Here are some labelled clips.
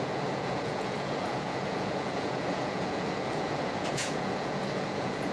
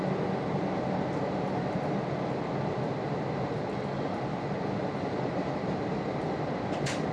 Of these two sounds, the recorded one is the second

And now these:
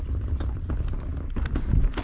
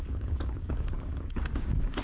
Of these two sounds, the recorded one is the first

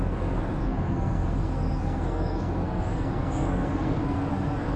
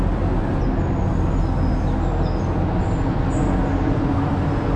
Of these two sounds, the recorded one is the second